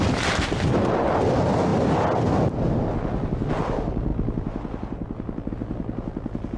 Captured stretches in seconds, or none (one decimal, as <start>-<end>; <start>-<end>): 0.0-6.6